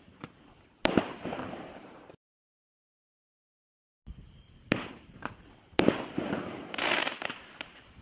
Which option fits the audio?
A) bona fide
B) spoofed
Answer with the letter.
B